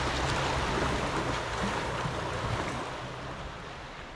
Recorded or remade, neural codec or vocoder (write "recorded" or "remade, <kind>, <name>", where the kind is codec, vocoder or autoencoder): recorded